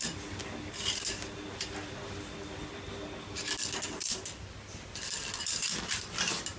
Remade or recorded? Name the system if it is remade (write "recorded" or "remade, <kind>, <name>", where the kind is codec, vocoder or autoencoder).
recorded